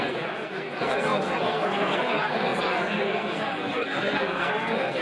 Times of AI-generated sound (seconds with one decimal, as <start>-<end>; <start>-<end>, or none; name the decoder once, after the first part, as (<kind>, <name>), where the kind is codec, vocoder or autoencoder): 0.0-5.0 (codec, SNAC)